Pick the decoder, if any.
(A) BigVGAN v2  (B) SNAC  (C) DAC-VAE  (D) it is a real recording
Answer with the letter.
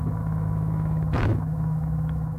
C